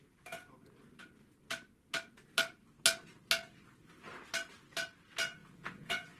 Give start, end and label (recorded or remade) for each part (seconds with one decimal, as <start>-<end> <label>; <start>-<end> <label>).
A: 0.0-5.4 recorded; 5.4-6.2 remade